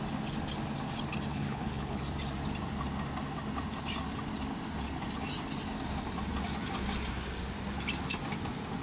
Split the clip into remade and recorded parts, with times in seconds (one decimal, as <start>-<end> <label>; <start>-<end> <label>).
0.0-1.3 recorded; 1.3-2.0 remade; 2.0-8.8 recorded